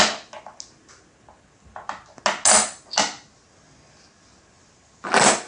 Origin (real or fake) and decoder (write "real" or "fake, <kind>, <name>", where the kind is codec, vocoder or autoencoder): real